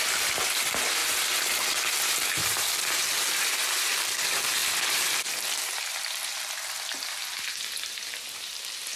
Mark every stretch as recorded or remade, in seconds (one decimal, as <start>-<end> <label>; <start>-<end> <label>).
0.0-1.0 recorded; 1.0-3.1 remade; 3.1-4.6 recorded; 4.6-6.7 remade; 6.7-9.0 recorded